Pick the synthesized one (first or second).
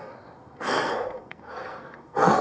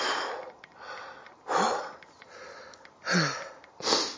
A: first